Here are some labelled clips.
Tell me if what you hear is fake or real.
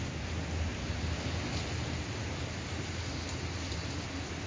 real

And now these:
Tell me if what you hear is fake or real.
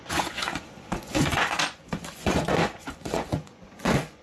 fake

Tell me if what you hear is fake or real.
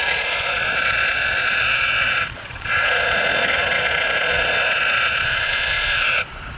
fake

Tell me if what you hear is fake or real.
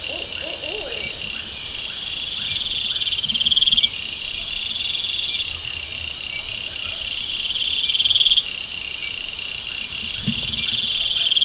real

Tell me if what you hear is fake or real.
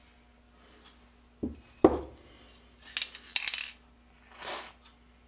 real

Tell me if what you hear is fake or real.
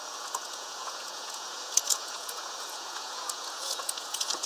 fake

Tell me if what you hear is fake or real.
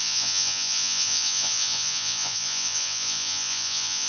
fake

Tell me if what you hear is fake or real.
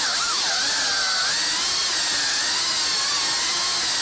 real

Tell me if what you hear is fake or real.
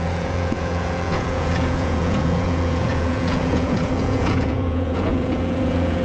fake